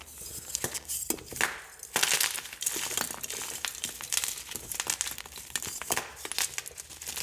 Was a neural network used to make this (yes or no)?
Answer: no